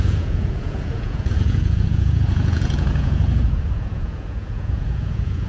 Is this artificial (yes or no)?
yes